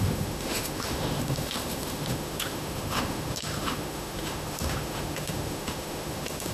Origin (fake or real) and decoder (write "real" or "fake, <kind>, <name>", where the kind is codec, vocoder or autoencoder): fake, autoencoder, DAC-VAE